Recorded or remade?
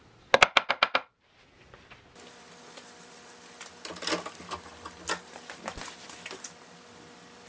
recorded